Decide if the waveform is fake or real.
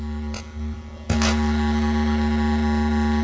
real